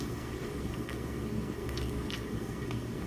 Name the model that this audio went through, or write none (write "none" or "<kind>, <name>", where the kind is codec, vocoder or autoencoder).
codec, SNAC